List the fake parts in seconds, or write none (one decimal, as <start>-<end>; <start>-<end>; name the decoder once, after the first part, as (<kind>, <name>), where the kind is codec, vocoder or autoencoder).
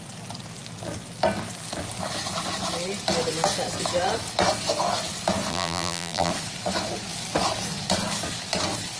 5.5-6.3 (vocoder, BigVGAN v2)